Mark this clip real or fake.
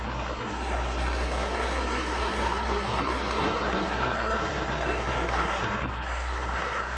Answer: fake